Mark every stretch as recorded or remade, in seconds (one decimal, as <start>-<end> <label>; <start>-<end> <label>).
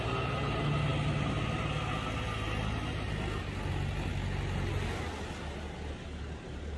0.0-6.8 recorded